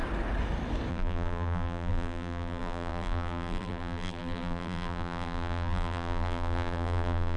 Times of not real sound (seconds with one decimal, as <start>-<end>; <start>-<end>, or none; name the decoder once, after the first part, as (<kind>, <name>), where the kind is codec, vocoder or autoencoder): 0.9-7.4 (vocoder, BigVGAN v2)